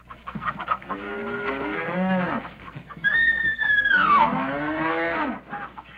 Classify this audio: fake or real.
fake